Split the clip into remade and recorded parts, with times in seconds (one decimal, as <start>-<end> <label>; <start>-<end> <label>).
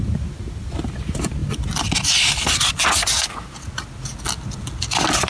0.0-5.3 recorded